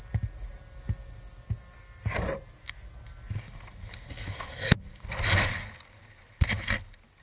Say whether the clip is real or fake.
real